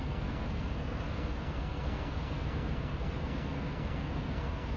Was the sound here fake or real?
fake